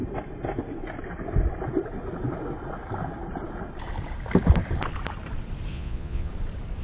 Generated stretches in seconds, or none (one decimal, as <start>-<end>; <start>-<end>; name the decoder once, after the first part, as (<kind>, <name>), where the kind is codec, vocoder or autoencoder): 5.7-6.3 (vocoder, Vocos)